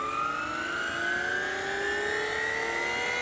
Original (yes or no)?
yes